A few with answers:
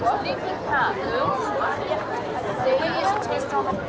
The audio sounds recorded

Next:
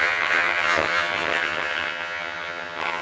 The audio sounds remade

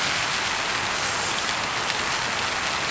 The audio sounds recorded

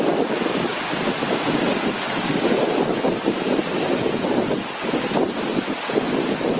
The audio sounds recorded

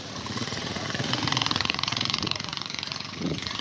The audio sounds remade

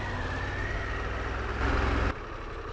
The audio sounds recorded